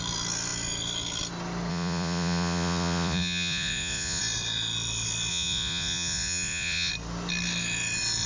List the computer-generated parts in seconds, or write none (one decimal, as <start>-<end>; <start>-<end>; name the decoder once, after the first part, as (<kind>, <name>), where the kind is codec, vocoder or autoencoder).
1.7-4.2 (vocoder, Vocos); 5.3-6.9